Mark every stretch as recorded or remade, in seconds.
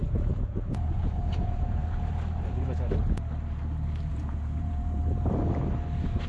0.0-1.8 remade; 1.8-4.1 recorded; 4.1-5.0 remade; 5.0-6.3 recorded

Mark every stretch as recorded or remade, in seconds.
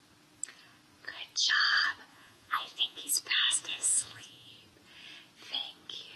0.0-2.1 recorded; 2.1-3.1 remade; 3.1-3.7 recorded; 3.7-4.5 remade; 4.5-6.2 recorded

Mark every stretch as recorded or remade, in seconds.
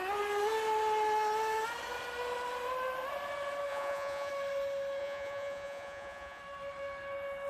0.0-3.7 recorded; 3.7-4.3 remade; 4.3-5.0 recorded; 5.0-6.4 remade; 6.4-7.5 recorded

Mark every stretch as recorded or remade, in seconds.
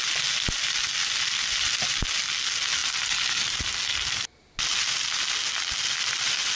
0.0-6.5 recorded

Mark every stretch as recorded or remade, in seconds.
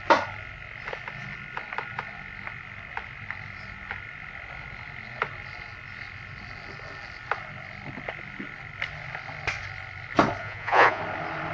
0.0-10.4 recorded; 10.4-11.0 remade; 11.0-11.5 recorded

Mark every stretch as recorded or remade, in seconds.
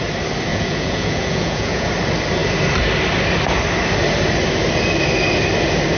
0.0-0.5 recorded; 0.5-1.9 remade; 1.9-6.0 recorded